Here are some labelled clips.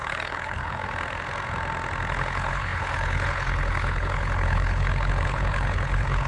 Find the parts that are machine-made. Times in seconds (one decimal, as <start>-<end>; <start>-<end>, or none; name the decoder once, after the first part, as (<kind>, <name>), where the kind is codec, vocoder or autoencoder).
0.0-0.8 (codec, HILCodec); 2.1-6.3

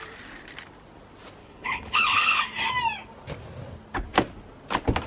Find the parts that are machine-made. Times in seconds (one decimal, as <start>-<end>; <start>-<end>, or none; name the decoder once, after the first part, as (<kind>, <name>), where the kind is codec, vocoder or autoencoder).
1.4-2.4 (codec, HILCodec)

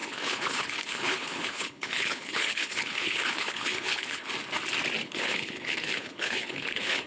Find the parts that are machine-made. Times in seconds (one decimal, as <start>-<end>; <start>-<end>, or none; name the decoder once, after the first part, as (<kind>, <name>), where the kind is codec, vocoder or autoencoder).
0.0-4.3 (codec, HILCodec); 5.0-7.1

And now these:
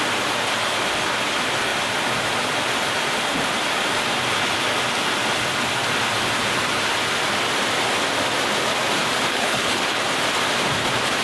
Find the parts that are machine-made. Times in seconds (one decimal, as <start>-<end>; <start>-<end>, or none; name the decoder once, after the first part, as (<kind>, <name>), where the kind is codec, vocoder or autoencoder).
9.3-10.0 (codec, HILCodec)